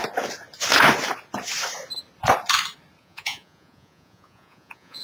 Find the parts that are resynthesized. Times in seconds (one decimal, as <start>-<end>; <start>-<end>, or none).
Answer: 3.0-5.0